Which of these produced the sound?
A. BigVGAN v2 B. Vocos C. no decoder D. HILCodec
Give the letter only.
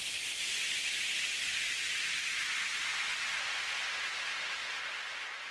C